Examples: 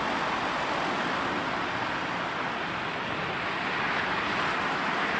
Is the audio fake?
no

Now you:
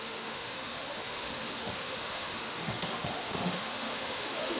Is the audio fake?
yes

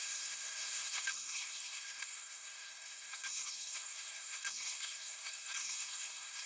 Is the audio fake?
yes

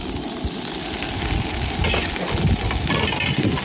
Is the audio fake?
no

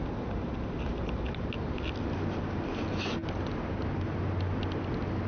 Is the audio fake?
no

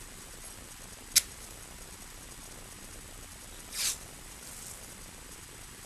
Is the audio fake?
no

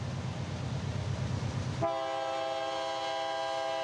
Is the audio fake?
no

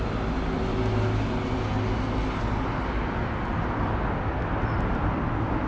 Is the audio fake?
no